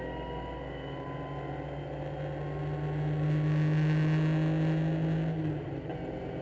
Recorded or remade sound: recorded